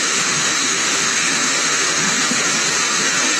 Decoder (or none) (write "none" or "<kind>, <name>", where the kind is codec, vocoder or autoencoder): autoencoder, DAC-VAE